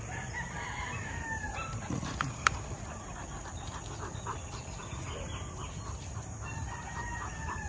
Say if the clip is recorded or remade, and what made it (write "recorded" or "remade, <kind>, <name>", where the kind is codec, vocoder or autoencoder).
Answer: recorded